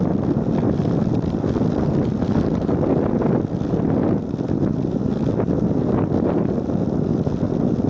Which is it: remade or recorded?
recorded